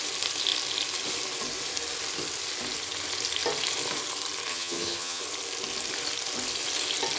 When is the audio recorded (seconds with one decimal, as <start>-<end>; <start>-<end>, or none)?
0.0-4.5; 5.2-7.2